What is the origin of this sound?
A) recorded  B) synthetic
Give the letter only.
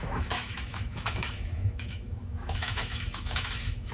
B